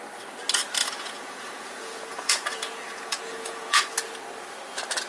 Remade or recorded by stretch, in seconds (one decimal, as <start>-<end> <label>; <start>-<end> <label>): 0.0-0.8 recorded; 0.8-3.9 remade; 3.9-5.1 recorded